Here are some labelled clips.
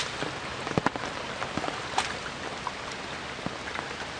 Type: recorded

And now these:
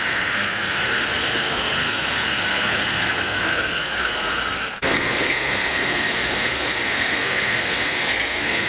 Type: remade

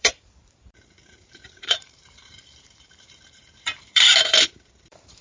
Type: remade